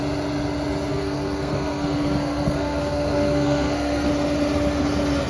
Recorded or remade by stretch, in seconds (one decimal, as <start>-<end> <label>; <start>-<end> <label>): 0.0-0.9 recorded; 0.9-4.1 remade; 4.1-5.3 recorded